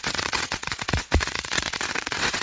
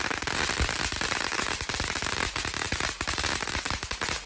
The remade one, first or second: first